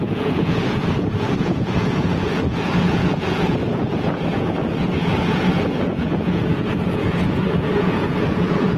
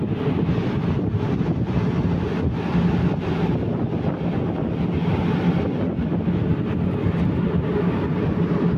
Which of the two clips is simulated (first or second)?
first